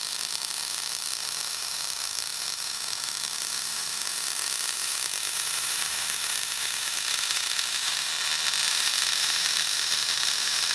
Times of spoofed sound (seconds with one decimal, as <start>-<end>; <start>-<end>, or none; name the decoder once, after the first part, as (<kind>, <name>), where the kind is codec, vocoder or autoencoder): 0.0-8.1 (autoencoder, DAC-VAE); 8.7-10.7